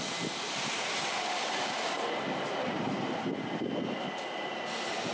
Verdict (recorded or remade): remade